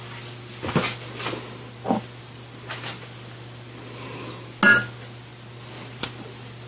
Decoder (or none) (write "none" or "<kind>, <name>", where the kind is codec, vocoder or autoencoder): none